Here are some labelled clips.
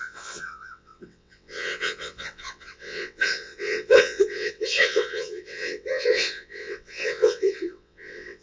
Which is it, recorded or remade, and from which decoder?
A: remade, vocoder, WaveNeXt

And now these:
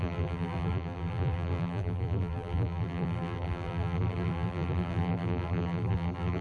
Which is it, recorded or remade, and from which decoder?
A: remade, vocoder, BigVGAN v2